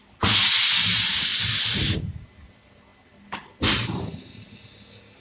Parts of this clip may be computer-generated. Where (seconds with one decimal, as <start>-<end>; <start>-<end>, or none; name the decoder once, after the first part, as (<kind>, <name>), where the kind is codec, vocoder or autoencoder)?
none